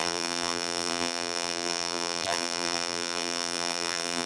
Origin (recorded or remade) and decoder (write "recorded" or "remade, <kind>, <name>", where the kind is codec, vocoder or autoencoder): remade, vocoder, BigVGAN v2